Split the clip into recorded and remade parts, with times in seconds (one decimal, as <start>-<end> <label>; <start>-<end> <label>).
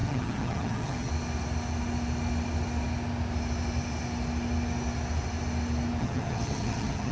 0.0-1.1 remade; 1.1-6.0 recorded; 6.0-7.1 remade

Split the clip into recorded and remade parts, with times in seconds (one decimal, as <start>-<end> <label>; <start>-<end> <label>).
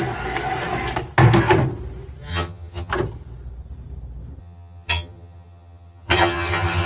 0.0-2.3 recorded; 2.3-2.9 remade; 2.9-4.4 recorded; 4.4-6.9 remade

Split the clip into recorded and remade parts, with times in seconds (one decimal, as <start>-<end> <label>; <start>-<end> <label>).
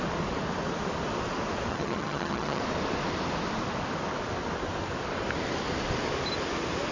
0.0-1.7 recorded; 1.7-2.6 remade; 2.6-6.9 recorded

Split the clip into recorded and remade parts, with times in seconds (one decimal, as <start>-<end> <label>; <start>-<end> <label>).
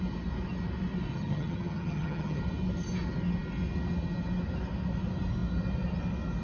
0.0-1.1 recorded; 1.1-2.4 remade; 2.4-6.4 recorded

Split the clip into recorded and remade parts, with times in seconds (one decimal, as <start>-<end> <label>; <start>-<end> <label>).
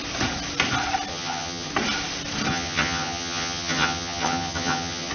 0.0-1.1 recorded; 1.1-1.7 remade; 1.7-2.5 recorded; 2.5-5.1 remade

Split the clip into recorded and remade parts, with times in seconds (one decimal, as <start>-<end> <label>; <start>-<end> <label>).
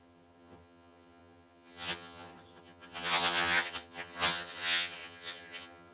0.0-5.9 remade